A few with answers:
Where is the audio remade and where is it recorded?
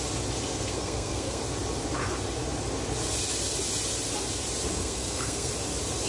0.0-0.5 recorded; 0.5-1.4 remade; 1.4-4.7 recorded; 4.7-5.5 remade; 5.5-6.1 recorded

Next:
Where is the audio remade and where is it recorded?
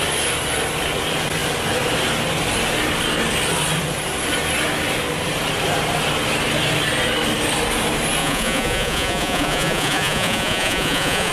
0.0-8.2 recorded; 8.2-11.3 remade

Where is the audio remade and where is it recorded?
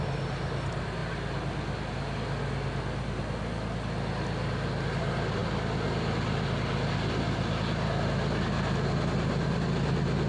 0.0-10.3 recorded